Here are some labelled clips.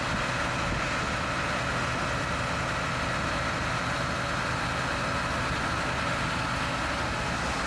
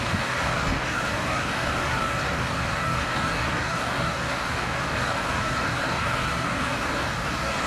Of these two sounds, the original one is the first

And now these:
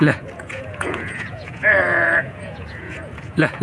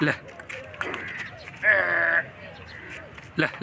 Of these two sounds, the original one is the second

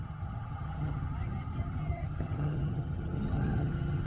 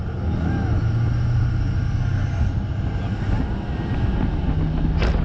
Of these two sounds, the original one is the second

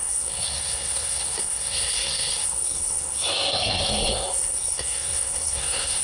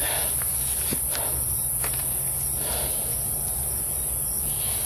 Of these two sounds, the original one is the second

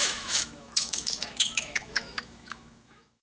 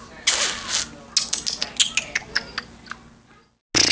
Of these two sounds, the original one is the second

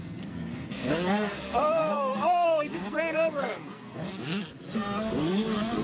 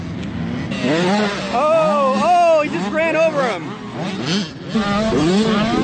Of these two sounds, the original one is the second